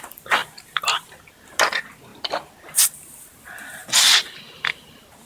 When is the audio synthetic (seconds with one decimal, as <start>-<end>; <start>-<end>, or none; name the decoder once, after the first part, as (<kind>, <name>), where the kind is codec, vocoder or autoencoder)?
0.4-1.3 (vocoder, BigVGAN v2); 3.8-4.4